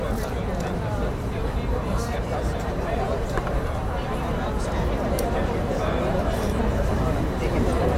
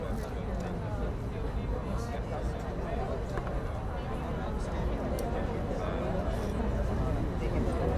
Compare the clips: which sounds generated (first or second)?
first